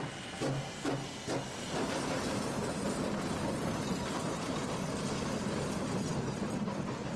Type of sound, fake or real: real